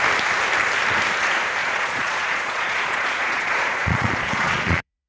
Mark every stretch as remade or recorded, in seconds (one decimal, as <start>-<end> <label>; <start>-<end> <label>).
0.0-1.6 recorded; 1.6-5.1 remade